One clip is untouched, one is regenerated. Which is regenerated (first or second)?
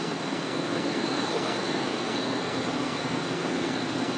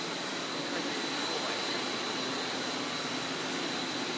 first